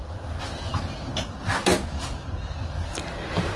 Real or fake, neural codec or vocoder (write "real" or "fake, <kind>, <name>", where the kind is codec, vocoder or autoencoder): real